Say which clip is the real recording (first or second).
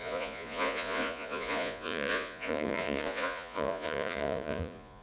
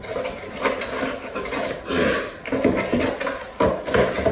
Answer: second